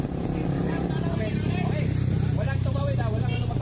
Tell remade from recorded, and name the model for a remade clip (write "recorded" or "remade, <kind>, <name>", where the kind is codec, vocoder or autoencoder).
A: recorded